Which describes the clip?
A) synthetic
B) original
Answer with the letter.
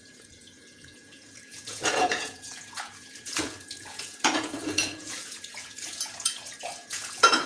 A